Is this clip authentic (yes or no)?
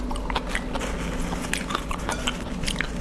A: yes